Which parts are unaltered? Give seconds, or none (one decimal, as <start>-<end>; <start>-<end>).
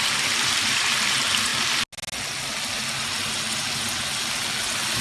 0.0-5.0